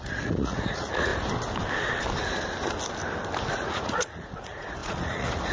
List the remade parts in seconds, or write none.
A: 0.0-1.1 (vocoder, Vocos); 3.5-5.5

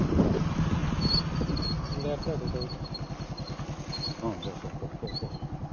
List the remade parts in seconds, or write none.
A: none

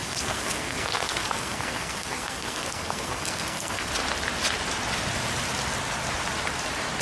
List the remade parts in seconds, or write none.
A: 0.0-3.9 (codec, SNAC)